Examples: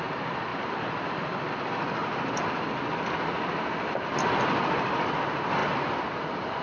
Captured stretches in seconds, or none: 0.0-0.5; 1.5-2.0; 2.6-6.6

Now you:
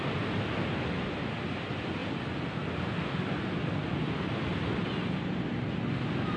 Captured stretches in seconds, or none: 0.0-6.4

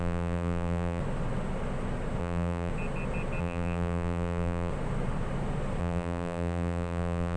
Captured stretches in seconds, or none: 1.0-2.2; 2.7-3.4; 4.7-5.8